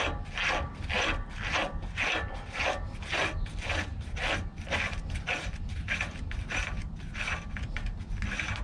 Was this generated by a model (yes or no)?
no